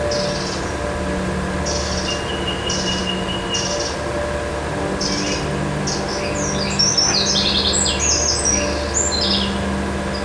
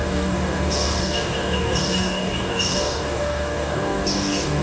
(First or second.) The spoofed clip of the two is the second